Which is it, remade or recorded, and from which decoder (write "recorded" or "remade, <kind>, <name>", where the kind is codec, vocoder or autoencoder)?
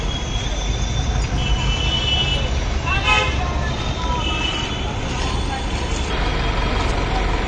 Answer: recorded